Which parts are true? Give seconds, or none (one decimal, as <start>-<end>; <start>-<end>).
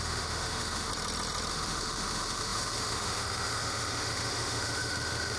0.9-1.5